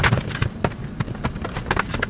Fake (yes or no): no